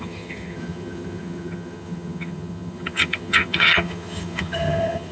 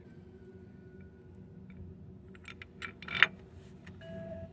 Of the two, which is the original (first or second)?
second